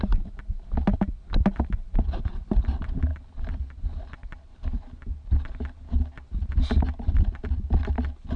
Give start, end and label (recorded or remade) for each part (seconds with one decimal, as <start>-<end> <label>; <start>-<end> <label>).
0.0-8.4 recorded